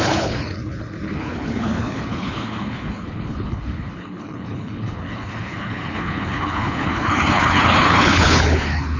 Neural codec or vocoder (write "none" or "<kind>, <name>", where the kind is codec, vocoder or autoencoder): codec, HILCodec